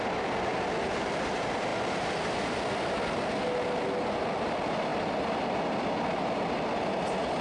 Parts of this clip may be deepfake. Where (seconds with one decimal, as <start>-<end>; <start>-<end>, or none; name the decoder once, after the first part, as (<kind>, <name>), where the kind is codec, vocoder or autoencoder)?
none